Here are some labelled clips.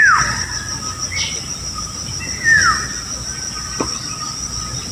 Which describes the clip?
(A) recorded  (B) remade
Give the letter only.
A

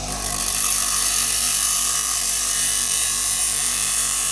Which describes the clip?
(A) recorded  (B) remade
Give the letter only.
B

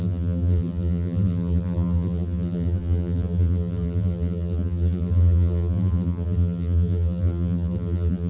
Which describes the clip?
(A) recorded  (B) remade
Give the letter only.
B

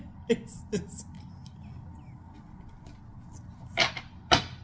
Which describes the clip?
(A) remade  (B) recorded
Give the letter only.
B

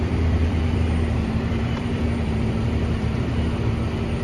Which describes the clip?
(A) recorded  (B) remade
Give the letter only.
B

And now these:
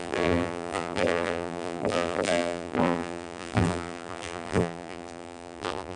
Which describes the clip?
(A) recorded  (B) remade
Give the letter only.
B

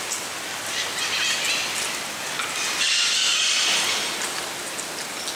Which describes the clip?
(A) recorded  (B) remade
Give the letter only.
A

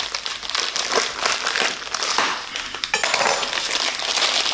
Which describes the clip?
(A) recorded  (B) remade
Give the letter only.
B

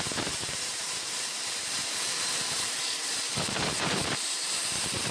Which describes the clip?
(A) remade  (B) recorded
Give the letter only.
A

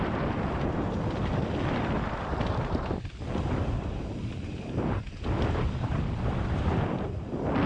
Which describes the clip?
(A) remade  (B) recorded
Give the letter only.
A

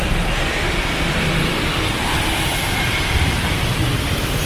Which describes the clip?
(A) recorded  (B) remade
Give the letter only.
B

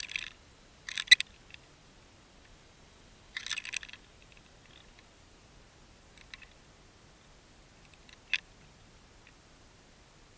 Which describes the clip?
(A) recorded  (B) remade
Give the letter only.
A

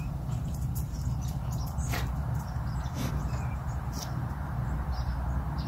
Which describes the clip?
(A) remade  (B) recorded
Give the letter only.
A